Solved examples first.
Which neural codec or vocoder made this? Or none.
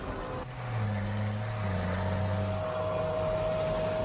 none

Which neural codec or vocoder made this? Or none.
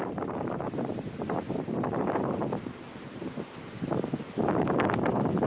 vocoder, BigVGAN v2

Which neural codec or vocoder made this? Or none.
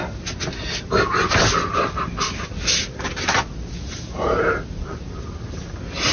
none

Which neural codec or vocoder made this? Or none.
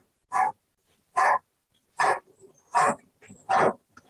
vocoder, BigVGAN v2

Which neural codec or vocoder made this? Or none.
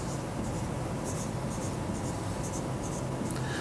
none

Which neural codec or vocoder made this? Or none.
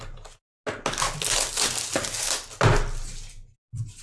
none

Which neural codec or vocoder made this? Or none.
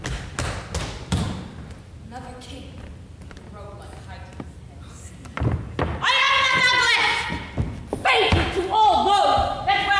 none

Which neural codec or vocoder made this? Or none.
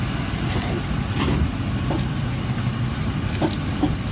none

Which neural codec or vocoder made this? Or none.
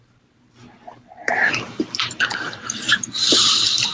vocoder, BigVGAN v2